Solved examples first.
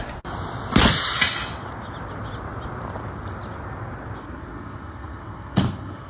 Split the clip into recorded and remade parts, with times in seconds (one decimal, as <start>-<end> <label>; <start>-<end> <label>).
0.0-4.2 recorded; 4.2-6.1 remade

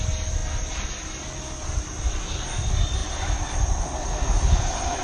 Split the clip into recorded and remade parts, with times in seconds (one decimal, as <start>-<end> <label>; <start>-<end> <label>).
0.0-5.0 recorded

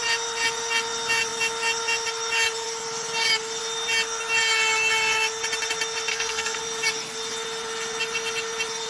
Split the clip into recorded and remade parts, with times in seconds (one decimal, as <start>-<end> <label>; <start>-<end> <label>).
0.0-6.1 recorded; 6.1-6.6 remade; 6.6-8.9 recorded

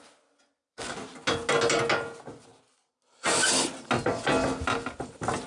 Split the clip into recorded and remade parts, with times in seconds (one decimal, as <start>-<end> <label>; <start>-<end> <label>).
0.0-5.5 recorded

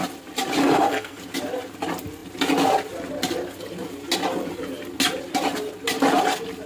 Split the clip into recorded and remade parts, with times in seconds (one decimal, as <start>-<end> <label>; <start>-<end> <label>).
0.0-0.6 recorded; 0.6-1.2 remade; 1.2-6.7 recorded

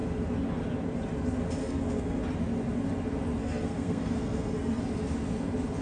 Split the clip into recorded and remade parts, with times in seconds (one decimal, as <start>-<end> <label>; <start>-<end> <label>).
0.0-1.6 recorded; 1.6-2.2 remade; 2.2-3.4 recorded; 3.4-4.8 remade; 4.8-5.8 recorded